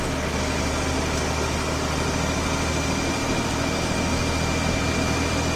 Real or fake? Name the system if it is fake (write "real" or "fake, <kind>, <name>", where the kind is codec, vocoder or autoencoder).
real